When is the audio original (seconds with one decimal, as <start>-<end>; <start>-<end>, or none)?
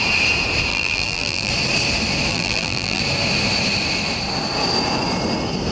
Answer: 0.0-0.7; 1.5-2.3; 3.0-5.7